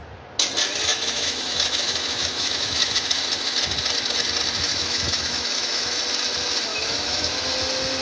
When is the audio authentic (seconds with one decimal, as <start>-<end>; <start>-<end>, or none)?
0.0-0.9; 3.2-4.7; 6.0-6.7; 7.3-8.0